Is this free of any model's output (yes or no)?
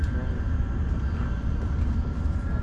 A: yes